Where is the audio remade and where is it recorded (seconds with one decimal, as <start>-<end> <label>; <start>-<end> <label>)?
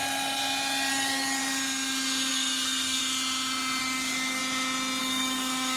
0.0-0.9 recorded; 0.9-1.4 remade; 1.4-2.3 recorded; 2.3-3.0 remade; 3.0-3.8 recorded; 3.8-4.4 remade; 4.4-5.0 recorded; 5.0-5.8 remade